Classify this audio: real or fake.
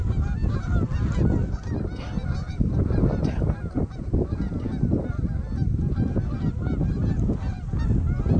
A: real